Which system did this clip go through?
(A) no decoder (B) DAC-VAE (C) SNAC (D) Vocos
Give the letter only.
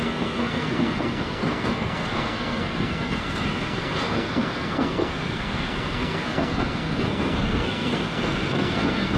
C